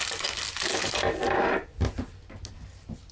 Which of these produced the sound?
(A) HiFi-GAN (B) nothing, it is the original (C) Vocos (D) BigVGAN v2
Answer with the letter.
B